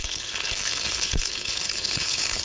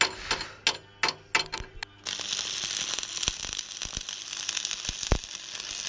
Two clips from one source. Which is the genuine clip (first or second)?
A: second